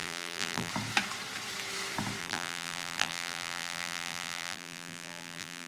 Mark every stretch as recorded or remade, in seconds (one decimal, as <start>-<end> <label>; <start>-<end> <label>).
0.0-0.7 remade; 0.7-2.2 recorded; 2.2-5.7 remade